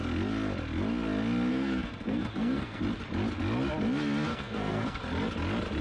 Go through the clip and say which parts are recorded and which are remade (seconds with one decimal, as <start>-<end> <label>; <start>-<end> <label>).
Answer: 0.0-1.5 recorded; 1.5-2.8 remade; 2.8-4.3 recorded; 4.3-5.0 remade; 5.0-5.8 recorded